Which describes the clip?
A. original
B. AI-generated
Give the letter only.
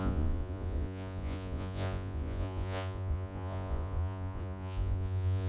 B